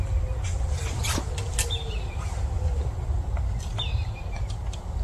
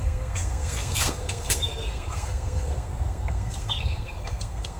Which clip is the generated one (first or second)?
second